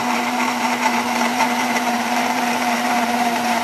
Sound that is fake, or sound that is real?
fake